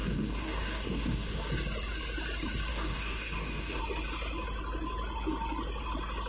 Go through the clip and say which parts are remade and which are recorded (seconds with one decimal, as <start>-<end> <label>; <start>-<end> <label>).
0.0-1.5 remade; 1.5-2.7 recorded; 2.7-3.8 remade; 3.8-6.3 recorded